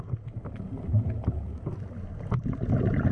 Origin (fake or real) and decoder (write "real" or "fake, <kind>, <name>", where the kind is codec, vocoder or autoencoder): real